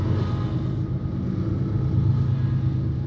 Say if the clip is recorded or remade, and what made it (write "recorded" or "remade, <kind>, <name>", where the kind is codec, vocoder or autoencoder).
recorded